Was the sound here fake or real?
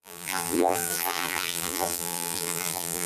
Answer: fake